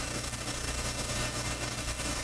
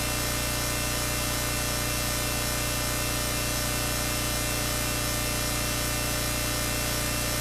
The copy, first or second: first